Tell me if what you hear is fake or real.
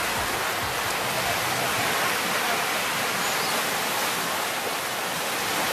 real